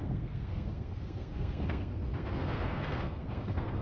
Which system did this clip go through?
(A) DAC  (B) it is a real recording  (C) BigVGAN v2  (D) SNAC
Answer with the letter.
D